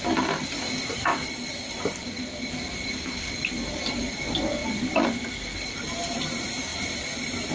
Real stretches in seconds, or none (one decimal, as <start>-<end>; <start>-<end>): 0.0-1.1; 2.5-4.6; 5.8-7.5